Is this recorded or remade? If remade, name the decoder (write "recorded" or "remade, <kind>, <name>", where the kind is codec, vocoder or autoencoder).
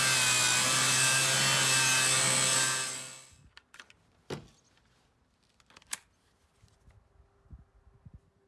recorded